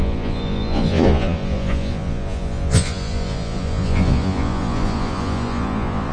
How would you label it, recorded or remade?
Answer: remade